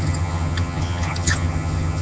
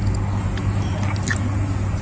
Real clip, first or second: second